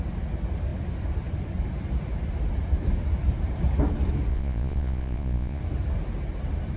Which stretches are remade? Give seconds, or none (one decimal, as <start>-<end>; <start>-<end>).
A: 4.3-5.6